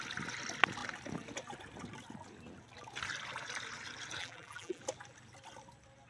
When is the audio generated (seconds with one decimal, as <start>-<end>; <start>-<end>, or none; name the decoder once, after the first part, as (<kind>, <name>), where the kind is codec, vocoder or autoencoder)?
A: 4.2-4.8 (vocoder, BigVGAN v2)